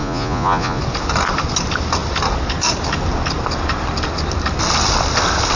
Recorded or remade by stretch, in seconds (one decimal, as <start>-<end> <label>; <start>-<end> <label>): 0.0-0.8 remade; 0.8-5.6 recorded